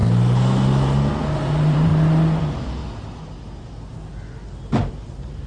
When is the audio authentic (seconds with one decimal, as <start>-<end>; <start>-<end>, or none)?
0.0-1.1; 1.9-2.4; 2.8-4.9